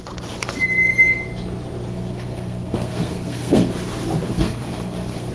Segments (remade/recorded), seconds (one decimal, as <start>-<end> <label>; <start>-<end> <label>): 0.0-1.9 recorded; 1.9-3.7 remade; 3.7-4.3 recorded; 4.3-5.3 remade